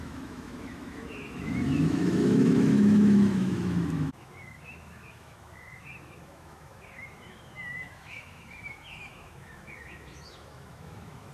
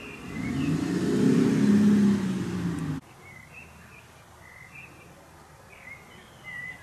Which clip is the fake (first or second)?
first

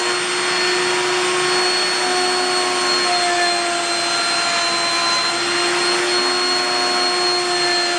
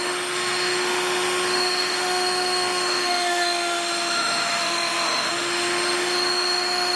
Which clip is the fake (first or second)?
second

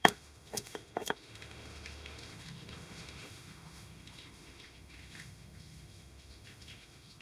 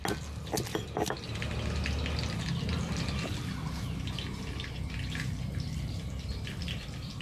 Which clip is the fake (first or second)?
first